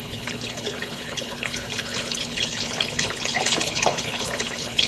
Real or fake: fake